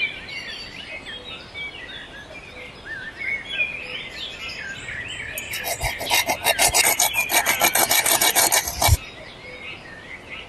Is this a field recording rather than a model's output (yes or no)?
yes